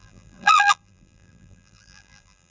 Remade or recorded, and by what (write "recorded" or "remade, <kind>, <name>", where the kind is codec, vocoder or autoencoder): remade, vocoder, BigVGAN v2